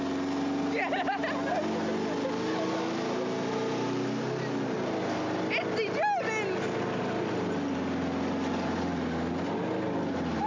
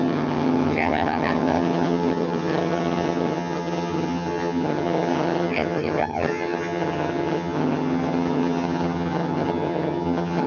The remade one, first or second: second